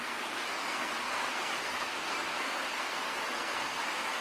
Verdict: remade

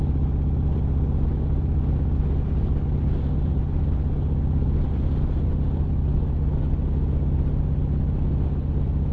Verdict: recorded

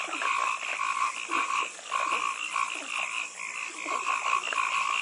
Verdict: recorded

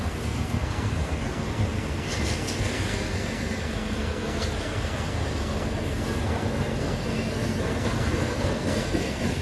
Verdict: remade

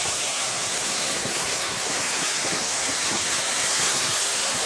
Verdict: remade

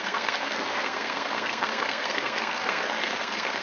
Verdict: remade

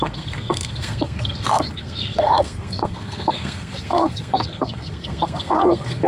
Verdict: remade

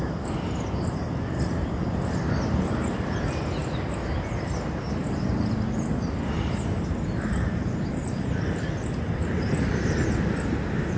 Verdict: recorded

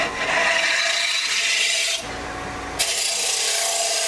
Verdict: recorded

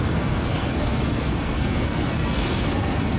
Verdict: remade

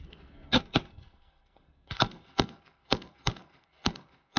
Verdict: remade